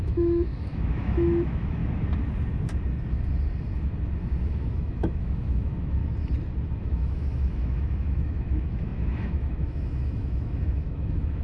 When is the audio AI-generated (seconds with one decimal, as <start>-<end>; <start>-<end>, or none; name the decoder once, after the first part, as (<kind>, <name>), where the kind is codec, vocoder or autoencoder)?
0.0-1.8 (autoencoder, DAC-VAE); 4.4-6.0; 6.8-11.4